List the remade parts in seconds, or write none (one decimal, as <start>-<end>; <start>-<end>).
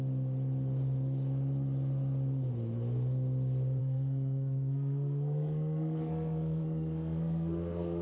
3.8-8.0